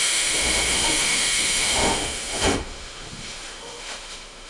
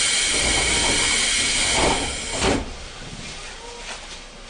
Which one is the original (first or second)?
second